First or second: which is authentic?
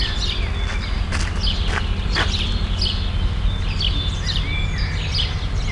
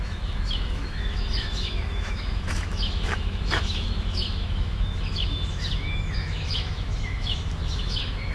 first